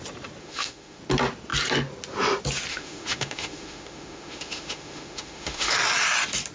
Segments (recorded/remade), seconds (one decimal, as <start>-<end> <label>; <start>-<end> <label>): 0.0-0.4 recorded; 0.4-1.0 remade; 1.0-2.7 recorded; 2.7-5.7 remade; 5.7-6.5 recorded